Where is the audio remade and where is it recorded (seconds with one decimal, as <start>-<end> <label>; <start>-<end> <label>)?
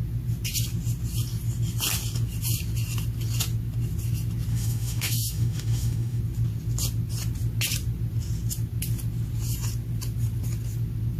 0.0-4.5 recorded; 4.5-6.2 remade; 6.2-11.2 recorded